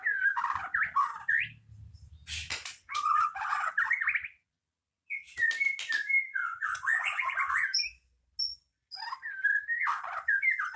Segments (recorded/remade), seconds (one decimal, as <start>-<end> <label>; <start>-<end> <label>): 0.0-2.7 recorded; 2.7-3.7 remade; 3.7-6.4 recorded; 6.4-7.5 remade; 7.5-10.8 recorded